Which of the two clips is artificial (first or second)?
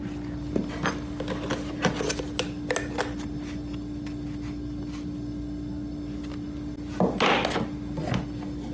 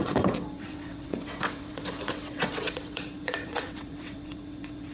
second